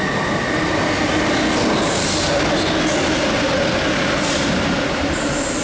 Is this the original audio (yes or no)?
yes